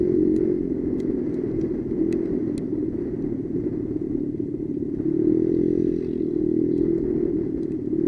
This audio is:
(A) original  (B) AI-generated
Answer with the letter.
A